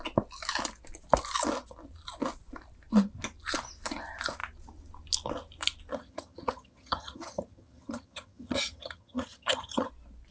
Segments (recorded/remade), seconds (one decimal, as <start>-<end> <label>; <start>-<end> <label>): 0.0-5.9 recorded; 5.9-9.9 remade; 9.9-10.3 recorded